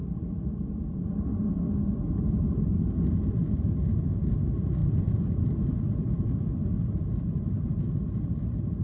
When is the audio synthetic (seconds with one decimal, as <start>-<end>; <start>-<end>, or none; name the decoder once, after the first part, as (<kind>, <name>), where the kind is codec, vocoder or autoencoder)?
0.0-1.2 (vocoder, BigVGAN v2); 4.8-5.3